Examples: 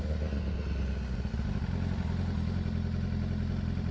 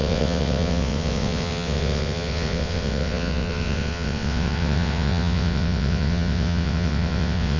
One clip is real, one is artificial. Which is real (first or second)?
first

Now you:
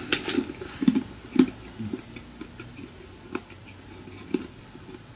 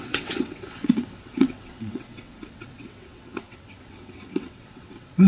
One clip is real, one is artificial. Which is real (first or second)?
first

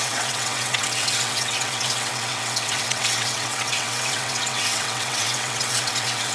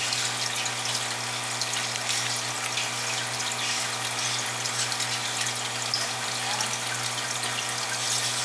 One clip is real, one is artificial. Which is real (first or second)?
second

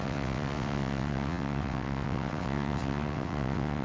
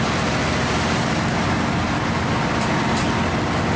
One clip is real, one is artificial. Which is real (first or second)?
second